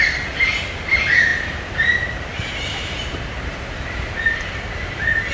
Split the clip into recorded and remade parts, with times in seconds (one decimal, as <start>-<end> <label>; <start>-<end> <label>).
0.0-1.3 recorded; 1.3-3.7 remade; 3.7-5.3 recorded